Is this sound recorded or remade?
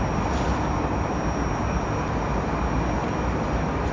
recorded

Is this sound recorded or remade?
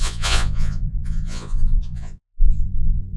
remade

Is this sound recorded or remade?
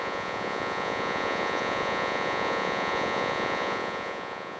remade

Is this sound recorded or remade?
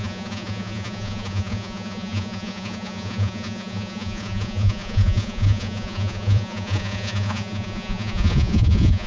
remade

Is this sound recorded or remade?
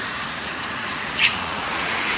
remade